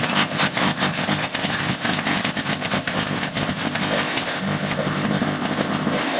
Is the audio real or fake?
fake